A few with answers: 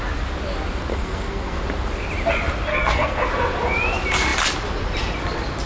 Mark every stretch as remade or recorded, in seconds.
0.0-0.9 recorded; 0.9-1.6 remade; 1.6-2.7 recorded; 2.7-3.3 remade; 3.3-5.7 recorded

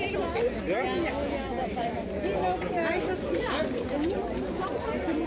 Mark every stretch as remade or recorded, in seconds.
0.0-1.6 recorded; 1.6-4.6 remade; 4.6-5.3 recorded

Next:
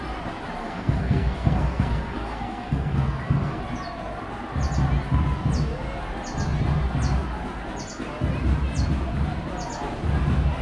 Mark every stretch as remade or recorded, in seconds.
0.0-0.6 recorded; 0.6-3.6 remade; 3.6-10.6 recorded

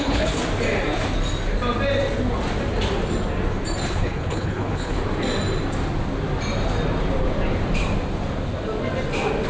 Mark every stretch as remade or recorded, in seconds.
0.0-0.4 remade; 0.4-3.9 recorded; 3.9-5.0 remade; 5.0-9.5 recorded

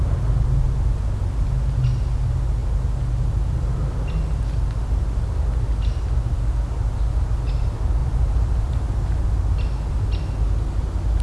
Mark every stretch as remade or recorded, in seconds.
0.0-8.0 recorded; 8.0-9.2 remade; 9.2-11.2 recorded

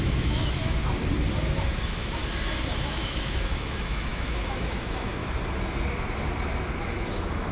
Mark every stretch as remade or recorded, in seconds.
0.0-0.6 remade; 0.6-1.4 recorded; 1.4-2.2 remade; 2.2-2.8 recorded; 2.8-5.2 remade; 5.2-6.8 recorded; 6.8-7.5 remade

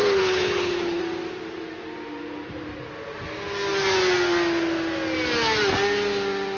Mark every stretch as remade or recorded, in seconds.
0.0-1.0 remade; 1.0-6.6 recorded